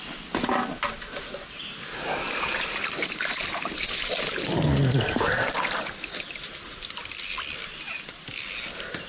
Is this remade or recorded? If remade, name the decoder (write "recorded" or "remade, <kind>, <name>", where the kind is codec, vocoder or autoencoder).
recorded